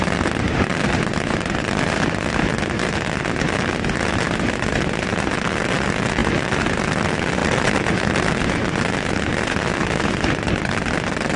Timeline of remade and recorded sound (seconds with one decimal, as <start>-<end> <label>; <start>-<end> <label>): 0.0-7.4 recorded; 7.4-8.2 remade; 8.2-11.4 recorded

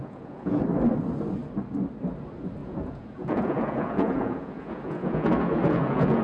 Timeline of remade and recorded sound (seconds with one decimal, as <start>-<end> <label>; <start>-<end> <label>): 0.0-0.6 remade; 0.6-2.6 recorded; 2.6-6.2 remade

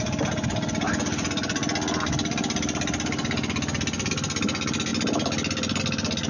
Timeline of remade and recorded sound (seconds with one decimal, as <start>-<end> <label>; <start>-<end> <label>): 0.0-6.3 recorded

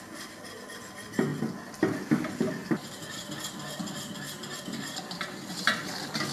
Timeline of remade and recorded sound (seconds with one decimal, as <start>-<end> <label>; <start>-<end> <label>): 0.0-6.3 recorded

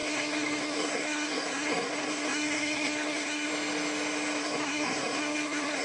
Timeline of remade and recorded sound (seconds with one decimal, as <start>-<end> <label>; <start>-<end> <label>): 0.0-3.5 remade; 3.5-4.4 recorded; 4.4-5.8 remade

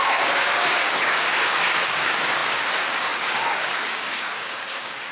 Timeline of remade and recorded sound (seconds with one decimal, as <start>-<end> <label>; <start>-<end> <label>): 0.0-5.1 remade

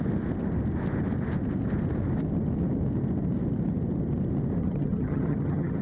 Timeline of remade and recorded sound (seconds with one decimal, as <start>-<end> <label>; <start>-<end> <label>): 0.0-4.6 recorded; 4.6-5.8 remade